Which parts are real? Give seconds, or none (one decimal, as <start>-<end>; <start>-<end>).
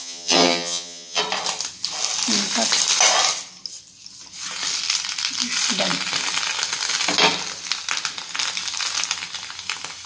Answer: 1.2-10.1